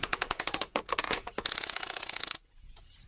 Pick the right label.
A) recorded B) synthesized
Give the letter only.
B